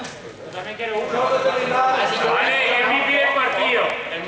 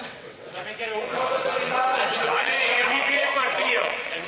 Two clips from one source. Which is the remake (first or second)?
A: second